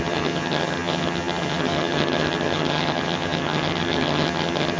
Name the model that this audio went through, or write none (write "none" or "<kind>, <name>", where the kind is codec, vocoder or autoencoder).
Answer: vocoder, HiFi-GAN